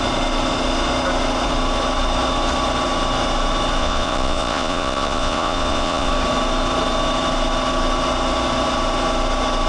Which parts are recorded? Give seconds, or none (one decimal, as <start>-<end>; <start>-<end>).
0.0-3.8; 6.1-9.7